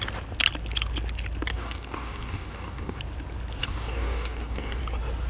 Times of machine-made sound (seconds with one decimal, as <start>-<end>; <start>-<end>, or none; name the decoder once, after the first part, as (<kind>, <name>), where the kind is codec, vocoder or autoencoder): 1.5-3.0 (codec, DAC); 3.6-4.8